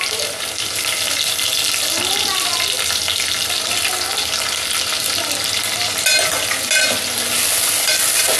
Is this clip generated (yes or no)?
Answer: no